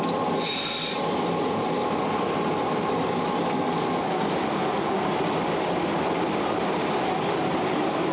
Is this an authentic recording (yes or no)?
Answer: yes